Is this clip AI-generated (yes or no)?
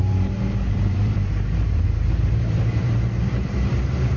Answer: yes